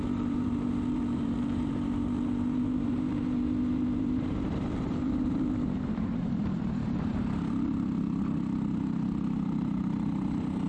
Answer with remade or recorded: remade